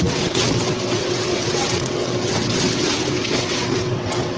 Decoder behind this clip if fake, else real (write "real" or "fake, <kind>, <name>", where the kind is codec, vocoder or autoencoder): fake, vocoder, WaveNeXt